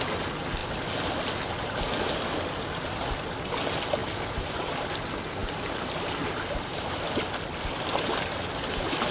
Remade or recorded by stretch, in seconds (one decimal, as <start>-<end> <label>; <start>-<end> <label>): 0.0-0.6 recorded; 0.6-1.5 remade; 1.5-5.4 recorded; 5.4-6.9 remade; 6.9-9.1 recorded